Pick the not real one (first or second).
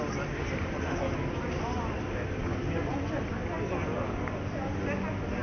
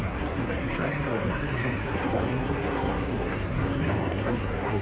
second